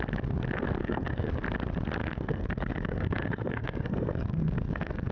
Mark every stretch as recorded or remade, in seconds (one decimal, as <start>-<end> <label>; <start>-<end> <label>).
0.0-0.8 recorded; 0.8-1.3 remade; 1.3-2.0 recorded; 2.0-5.1 remade